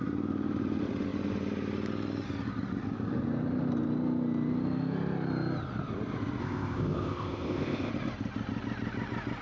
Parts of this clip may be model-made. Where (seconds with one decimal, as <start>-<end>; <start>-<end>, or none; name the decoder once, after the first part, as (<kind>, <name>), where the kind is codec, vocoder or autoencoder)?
6.4-7.9 (codec, ZipCodec)